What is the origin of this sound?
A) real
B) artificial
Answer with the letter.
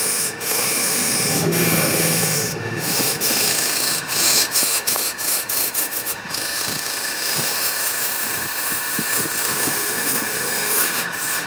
B